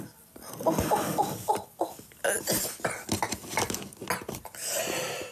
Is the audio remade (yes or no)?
no